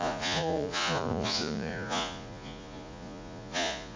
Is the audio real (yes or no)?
no